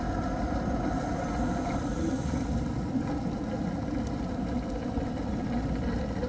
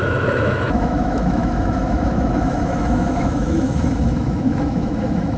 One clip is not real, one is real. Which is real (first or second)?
first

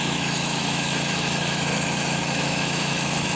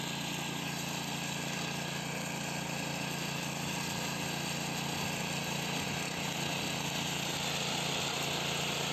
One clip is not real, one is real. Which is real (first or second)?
second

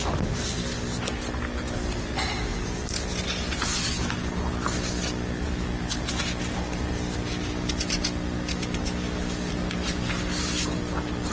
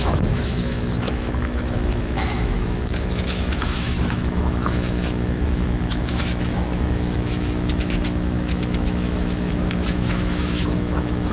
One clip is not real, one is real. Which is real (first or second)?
first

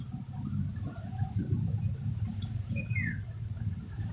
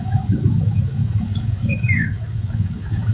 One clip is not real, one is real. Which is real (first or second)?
first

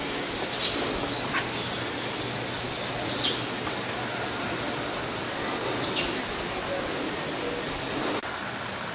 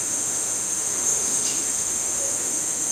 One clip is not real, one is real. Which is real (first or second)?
first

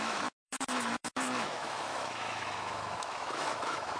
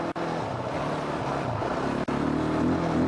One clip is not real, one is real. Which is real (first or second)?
second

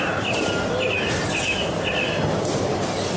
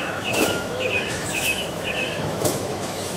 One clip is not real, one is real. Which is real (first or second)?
first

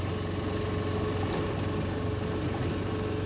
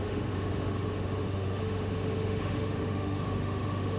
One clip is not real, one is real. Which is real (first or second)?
first